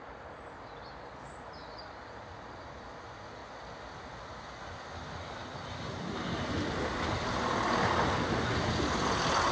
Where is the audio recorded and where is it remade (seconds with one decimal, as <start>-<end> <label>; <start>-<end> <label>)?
0.0-9.5 recorded